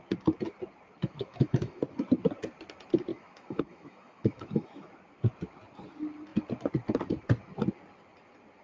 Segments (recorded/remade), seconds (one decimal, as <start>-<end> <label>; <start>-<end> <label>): 0.0-1.0 recorded; 1.0-1.8 remade; 1.8-3.1 recorded; 3.1-4.9 remade; 4.9-8.6 recorded